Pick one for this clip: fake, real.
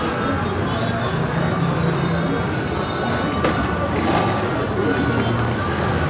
real